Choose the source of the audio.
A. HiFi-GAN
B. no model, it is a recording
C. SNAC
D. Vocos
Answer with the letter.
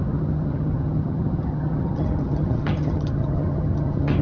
A